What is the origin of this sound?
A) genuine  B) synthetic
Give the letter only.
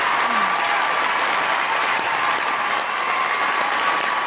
A